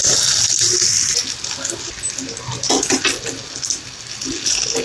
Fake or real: real